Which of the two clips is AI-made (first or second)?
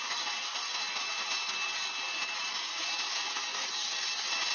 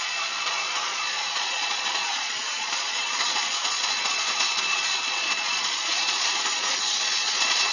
second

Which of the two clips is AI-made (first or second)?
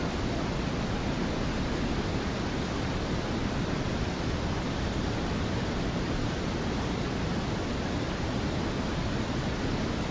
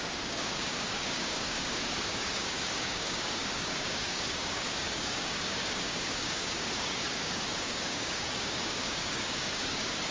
second